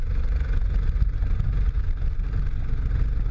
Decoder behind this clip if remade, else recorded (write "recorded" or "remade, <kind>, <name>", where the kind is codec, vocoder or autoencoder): recorded